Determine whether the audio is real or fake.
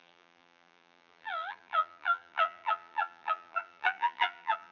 fake